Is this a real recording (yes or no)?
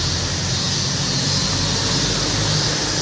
yes